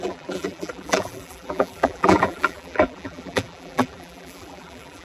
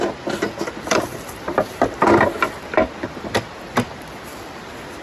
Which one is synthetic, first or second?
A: first